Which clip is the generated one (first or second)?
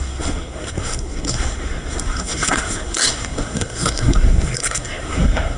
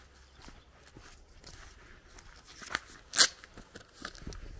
first